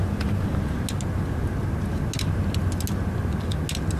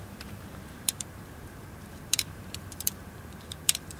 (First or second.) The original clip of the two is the first